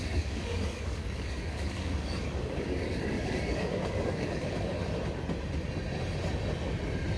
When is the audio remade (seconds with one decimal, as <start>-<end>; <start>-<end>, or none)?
0.0-4.8